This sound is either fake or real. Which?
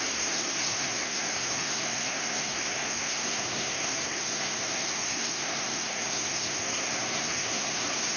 fake